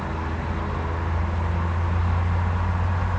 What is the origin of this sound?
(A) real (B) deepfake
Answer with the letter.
A